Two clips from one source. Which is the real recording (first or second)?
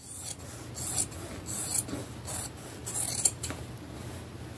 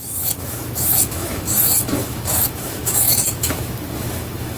first